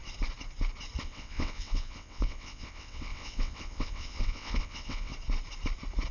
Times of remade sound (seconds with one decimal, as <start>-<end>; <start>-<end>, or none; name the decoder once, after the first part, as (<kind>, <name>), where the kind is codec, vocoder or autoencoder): 1.0-5.1 (vocoder, WaveNeXt)